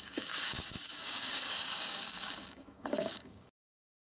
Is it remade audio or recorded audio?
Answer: remade